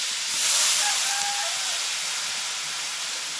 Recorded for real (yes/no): yes